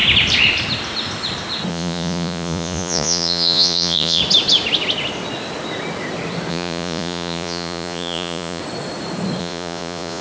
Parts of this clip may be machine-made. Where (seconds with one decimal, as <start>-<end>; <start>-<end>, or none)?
1.7-4.2; 6.5-8.6; 9.4-10.2